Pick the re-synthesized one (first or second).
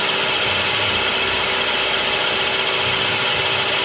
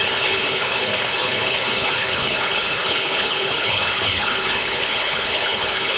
second